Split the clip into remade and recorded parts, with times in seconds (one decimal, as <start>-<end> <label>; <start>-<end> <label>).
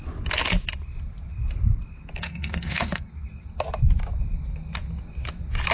0.0-2.2 recorded; 2.2-3.1 remade; 3.1-5.7 recorded